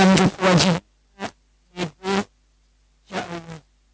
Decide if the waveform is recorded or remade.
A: recorded